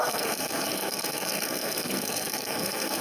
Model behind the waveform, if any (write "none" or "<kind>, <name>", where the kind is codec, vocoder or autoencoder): codec, SNAC